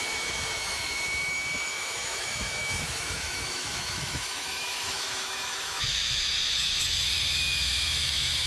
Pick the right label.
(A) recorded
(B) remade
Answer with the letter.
B